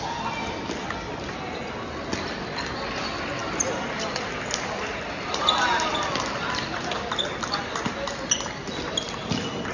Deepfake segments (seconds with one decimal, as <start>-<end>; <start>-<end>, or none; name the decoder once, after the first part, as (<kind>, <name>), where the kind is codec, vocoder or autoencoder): none